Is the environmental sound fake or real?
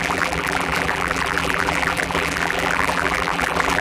fake